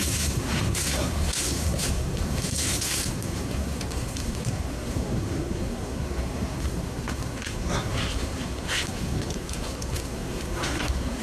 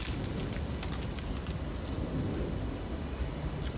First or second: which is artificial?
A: first